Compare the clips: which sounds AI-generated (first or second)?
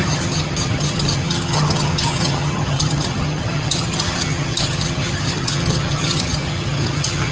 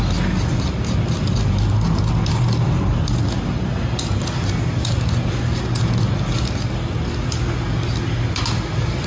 first